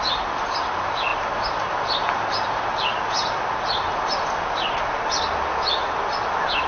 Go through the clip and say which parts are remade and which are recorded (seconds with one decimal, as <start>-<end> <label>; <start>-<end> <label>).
0.0-6.7 recorded